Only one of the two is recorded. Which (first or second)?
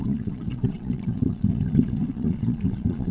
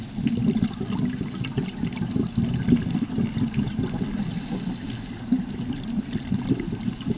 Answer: second